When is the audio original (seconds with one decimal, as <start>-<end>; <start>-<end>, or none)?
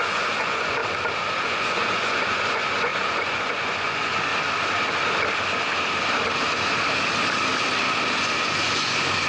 0.8-1.4; 4.3-8.1